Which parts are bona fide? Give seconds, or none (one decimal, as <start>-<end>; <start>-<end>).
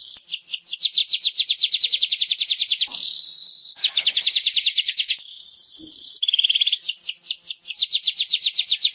0.0-3.8; 5.4-8.9